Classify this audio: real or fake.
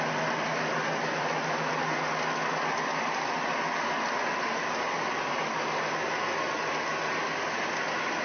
real